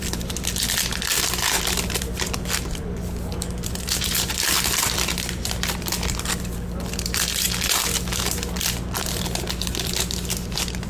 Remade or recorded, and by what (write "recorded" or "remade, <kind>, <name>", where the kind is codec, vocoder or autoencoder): remade, vocoder, BigVGAN v2